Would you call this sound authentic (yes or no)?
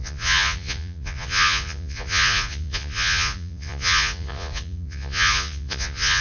no